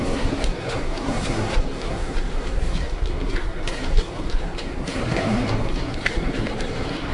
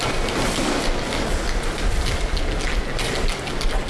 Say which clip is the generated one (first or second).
first